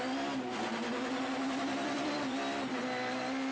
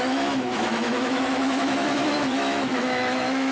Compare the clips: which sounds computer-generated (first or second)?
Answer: second